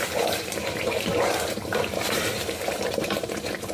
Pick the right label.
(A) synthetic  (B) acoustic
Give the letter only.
A